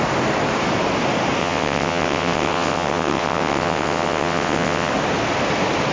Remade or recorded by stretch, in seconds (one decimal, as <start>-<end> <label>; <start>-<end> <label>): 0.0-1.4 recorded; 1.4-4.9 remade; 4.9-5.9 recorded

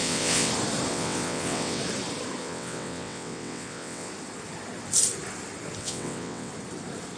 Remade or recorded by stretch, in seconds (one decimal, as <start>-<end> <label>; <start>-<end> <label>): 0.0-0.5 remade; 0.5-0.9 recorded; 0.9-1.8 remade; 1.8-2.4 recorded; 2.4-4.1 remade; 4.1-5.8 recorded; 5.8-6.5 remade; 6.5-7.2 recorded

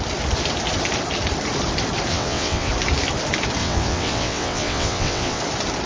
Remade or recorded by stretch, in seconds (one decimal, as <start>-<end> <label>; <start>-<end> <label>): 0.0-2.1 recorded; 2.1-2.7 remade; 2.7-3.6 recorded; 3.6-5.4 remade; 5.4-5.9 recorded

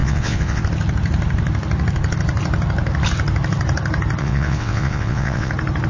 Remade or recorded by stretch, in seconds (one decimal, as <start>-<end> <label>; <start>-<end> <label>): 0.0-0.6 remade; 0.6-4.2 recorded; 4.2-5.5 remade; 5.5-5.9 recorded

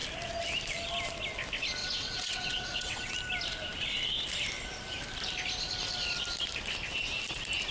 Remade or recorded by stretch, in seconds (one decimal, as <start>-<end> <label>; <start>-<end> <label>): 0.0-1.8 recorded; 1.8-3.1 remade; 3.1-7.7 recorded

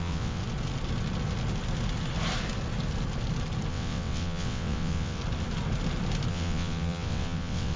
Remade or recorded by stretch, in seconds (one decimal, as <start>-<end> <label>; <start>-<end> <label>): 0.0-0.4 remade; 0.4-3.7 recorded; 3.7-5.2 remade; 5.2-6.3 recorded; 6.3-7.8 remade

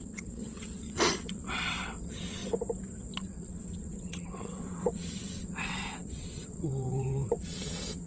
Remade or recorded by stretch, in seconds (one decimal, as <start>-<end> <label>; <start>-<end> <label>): 0.0-2.4 remade; 2.4-3.2 recorded; 3.2-8.1 remade

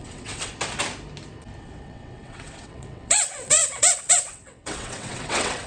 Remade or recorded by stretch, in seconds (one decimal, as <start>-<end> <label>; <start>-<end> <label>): 0.0-0.5 remade; 0.5-1.6 recorded; 1.6-5.7 remade